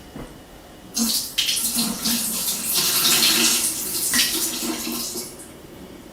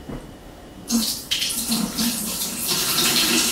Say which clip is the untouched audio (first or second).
first